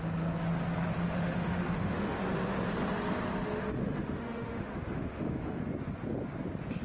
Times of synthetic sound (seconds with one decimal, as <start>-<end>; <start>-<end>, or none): 1.0-2.2; 3.8-5.6